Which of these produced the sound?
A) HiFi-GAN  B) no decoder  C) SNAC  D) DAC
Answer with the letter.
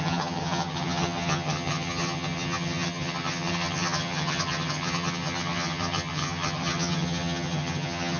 A